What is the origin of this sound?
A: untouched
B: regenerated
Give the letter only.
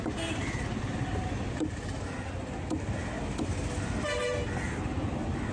A